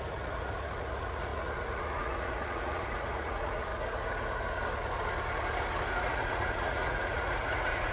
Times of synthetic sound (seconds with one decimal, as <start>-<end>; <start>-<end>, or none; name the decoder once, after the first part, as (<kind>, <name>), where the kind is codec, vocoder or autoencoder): 0.0-3.7 (vocoder, Vocos); 5.9-7.9